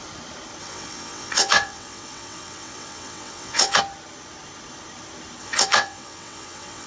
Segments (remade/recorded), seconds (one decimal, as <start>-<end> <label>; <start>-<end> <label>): 0.0-0.6 recorded; 0.6-3.8 remade; 3.8-5.4 recorded; 5.4-6.9 remade